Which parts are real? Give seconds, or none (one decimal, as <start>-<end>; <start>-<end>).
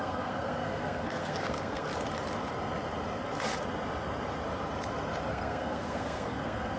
1.9-5.3